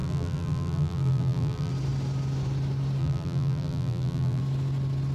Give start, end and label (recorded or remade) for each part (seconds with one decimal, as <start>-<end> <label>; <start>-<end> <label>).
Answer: 0.0-1.7 remade; 1.7-3.0 recorded; 3.0-4.4 remade; 4.4-5.1 recorded